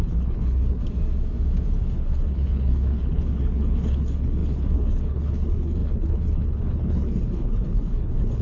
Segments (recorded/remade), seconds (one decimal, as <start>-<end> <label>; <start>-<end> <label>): 0.0-0.8 remade; 0.8-1.9 recorded; 1.9-8.4 remade